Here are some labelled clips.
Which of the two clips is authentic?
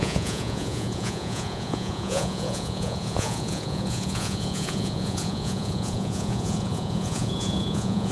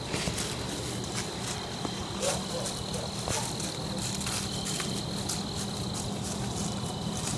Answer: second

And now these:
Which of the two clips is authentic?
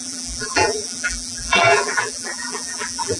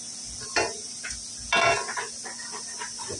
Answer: second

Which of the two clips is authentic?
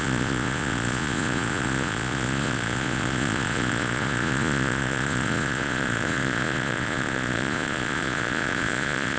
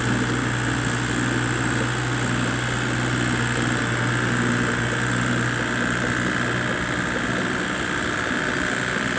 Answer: second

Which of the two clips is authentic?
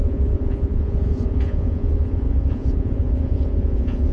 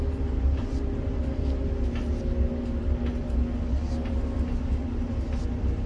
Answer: second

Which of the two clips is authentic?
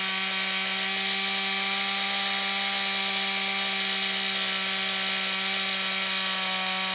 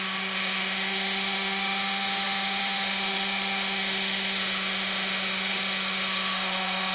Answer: first